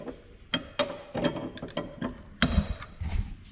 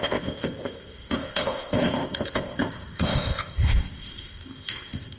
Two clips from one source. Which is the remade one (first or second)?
second